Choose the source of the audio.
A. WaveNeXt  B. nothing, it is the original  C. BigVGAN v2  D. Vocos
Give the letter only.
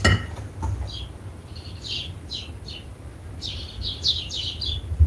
B